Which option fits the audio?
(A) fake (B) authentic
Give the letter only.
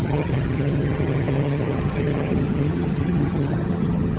A